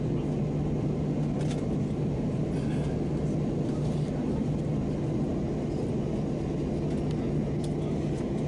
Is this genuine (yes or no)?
yes